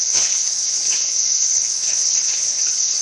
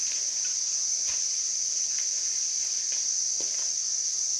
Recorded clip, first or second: second